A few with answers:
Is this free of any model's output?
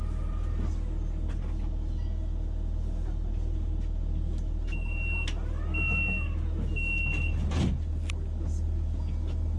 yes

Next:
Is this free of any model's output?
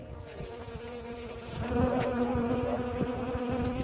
no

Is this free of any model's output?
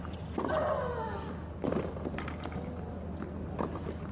yes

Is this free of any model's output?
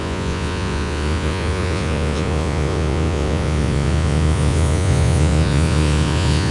no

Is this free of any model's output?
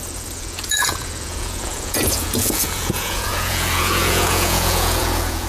no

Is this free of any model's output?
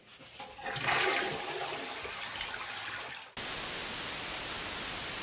yes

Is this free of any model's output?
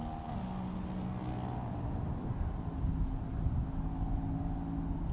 yes